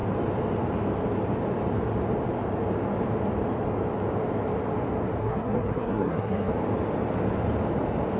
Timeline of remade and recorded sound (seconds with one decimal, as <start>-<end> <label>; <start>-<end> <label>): 0.0-5.2 recorded; 5.2-6.5 remade; 6.5-8.2 recorded